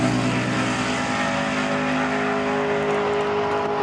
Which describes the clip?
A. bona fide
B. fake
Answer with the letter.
A